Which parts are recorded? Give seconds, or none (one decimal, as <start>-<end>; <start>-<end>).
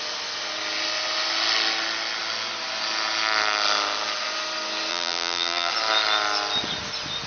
0.0-4.9; 5.7-7.3